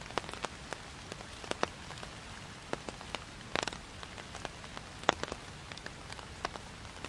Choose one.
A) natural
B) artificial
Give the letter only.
A